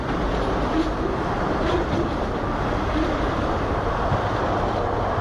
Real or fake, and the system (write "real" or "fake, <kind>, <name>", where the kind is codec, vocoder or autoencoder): real